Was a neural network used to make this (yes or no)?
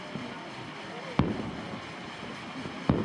no